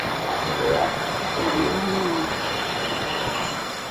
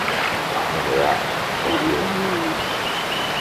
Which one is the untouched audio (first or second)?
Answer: second